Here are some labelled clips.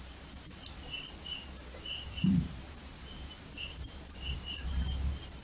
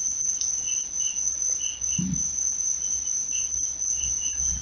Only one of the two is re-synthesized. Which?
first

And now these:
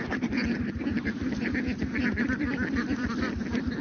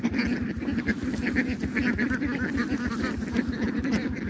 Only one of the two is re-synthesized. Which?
first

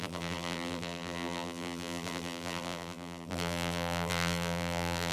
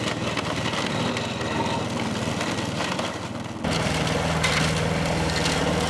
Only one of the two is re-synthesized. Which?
first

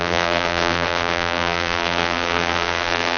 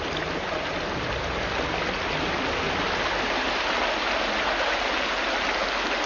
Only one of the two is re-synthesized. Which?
first